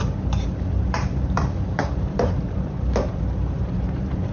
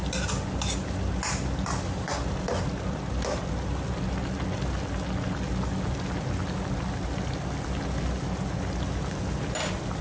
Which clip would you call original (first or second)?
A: second